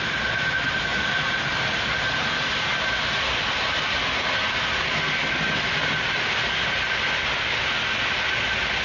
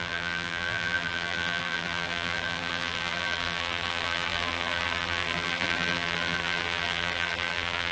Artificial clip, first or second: second